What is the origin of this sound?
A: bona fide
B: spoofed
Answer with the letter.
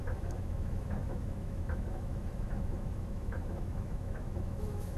B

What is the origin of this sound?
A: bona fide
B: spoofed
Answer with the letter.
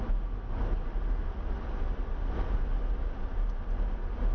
A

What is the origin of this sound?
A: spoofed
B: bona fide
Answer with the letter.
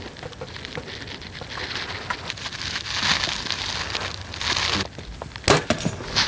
B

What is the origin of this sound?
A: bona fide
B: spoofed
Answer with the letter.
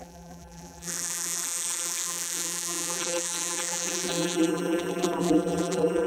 B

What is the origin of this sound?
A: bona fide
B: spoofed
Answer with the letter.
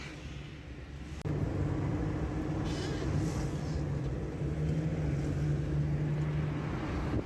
A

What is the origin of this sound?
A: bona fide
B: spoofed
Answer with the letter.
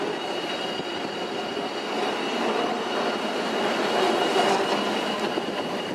A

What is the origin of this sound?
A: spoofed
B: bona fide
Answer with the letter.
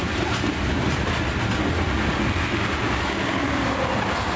B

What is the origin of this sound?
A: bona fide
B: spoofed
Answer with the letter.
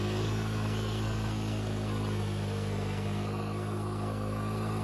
B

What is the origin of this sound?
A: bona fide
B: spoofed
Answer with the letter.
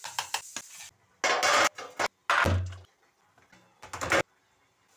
A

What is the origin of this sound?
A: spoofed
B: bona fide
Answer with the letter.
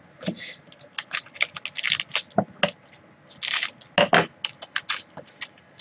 B